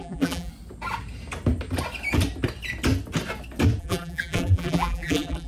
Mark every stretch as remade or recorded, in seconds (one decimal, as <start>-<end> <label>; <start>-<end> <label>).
0.0-0.5 remade; 0.5-3.8 recorded; 3.8-5.5 remade